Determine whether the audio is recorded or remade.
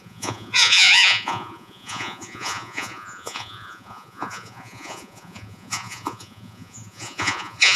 remade